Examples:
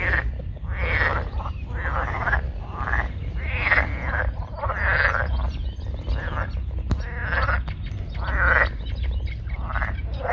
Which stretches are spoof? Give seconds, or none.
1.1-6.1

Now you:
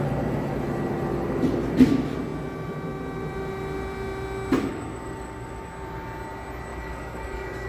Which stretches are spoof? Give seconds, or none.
4.7-5.7; 6.7-7.7

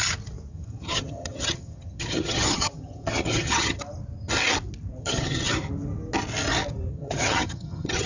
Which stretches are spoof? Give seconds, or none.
0.5-3.8; 5.0-5.5; 6.9-8.1

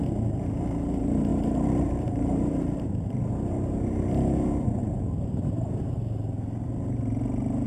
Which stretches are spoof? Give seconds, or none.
1.3-3.3; 4.8-5.8

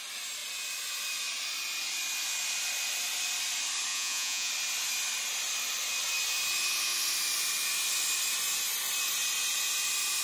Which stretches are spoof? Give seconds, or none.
3.9-4.5

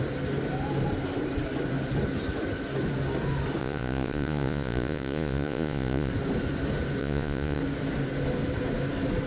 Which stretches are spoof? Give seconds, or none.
3.6-6.1; 7.0-7.6